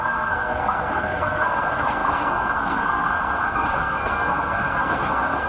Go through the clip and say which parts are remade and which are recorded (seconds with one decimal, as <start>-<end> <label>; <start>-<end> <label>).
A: 0.0-5.5 remade